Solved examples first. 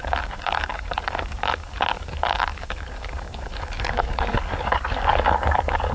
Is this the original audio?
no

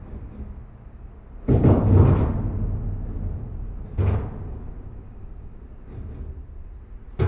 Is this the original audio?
yes